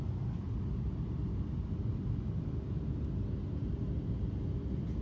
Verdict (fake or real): real